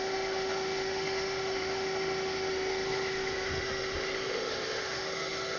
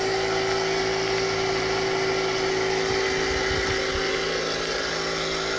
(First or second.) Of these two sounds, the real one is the second